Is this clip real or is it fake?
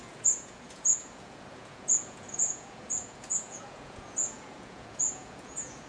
fake